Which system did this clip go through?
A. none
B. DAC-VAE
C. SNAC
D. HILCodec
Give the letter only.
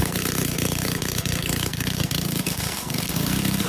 C